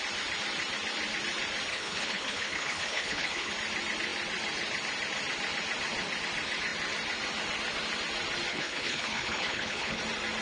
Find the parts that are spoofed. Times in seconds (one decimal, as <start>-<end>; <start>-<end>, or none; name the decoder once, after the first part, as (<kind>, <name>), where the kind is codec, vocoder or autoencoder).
1.7-3.5 (codec, HILCodec); 8.5-10.0